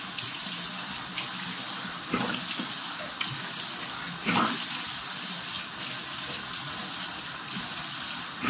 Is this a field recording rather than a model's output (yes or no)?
yes